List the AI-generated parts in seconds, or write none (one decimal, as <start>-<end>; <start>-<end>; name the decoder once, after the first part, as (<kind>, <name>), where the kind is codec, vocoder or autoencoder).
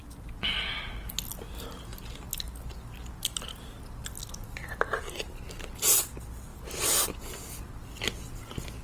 none